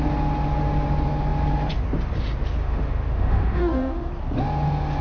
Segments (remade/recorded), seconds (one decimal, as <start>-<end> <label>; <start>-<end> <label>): 0.0-2.6 recorded; 2.6-4.1 remade; 4.1-5.0 recorded